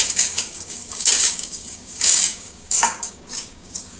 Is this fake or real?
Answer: fake